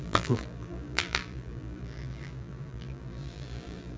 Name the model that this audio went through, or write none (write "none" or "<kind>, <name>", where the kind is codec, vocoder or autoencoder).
vocoder, BigVGAN v2